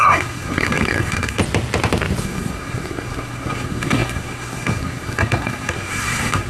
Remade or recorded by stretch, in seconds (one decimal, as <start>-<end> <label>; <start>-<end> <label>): 0.0-1.4 remade; 1.4-2.2 recorded; 2.2-6.5 remade